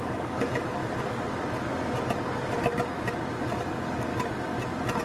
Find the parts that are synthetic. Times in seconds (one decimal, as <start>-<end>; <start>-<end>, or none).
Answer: 0.0-0.8; 3.5-4.1